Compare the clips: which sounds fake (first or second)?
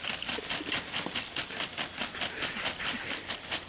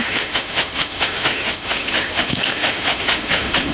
second